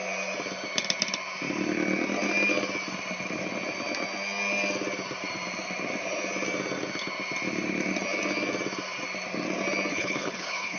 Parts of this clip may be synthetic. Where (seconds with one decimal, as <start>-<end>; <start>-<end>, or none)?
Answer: 9.9-10.8